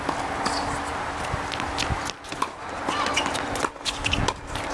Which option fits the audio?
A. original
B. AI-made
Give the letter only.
A